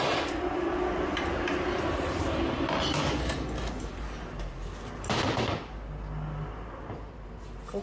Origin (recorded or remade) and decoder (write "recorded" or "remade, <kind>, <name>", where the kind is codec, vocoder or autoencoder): recorded